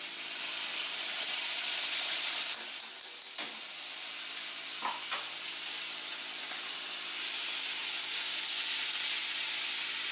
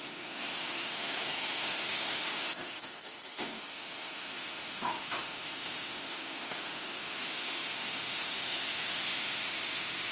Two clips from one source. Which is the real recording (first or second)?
first